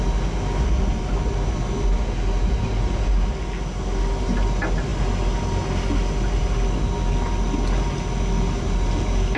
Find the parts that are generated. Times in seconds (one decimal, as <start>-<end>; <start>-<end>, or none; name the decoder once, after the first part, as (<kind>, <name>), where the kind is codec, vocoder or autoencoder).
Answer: none